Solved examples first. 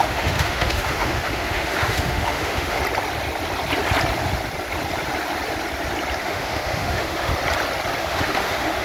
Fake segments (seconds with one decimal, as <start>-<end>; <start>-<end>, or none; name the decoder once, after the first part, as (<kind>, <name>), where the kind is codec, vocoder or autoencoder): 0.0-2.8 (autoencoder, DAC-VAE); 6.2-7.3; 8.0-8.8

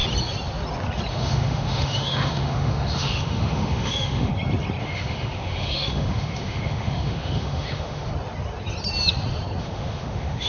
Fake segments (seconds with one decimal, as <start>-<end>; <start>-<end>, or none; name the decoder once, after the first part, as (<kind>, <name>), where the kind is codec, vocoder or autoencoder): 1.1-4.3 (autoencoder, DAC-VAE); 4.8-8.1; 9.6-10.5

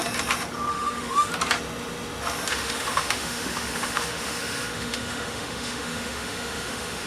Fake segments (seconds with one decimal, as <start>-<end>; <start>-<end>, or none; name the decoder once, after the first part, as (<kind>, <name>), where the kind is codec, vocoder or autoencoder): 0.7-1.3 (autoencoder, DAC-VAE); 2.5-7.1

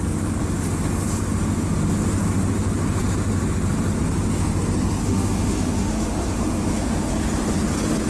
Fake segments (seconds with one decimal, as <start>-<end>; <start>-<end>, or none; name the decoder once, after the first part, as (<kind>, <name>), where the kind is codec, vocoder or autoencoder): 5.0-7.1 (autoencoder, DAC-VAE)